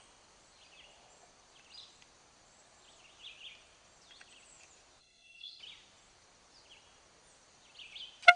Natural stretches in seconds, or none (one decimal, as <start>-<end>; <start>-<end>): 0.0-5.0; 5.6-8.4

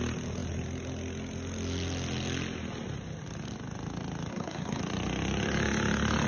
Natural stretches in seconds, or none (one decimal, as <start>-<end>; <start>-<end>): 0.0-4.3; 4.8-6.3

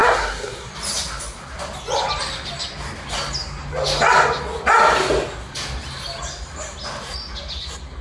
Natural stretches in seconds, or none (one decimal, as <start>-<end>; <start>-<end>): 0.7-8.0

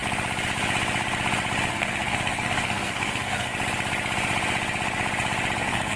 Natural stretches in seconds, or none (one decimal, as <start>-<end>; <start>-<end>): 0.0-1.7; 3.5-5.6

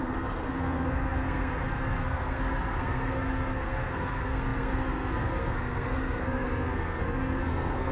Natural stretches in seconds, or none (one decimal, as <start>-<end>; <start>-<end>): none

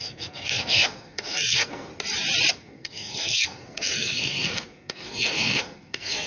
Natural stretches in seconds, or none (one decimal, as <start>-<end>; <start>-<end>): 1.9-2.5

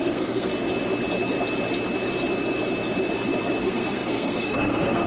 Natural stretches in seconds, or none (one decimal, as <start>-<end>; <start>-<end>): 0.5-3.6

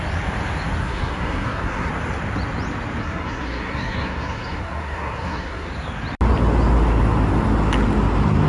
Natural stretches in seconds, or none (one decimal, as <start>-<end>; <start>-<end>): 0.0-0.8; 1.9-3.0; 5.7-8.5